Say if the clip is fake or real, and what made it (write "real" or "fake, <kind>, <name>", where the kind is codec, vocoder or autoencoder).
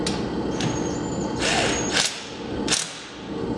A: real